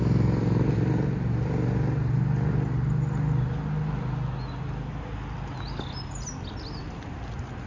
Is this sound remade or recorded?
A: recorded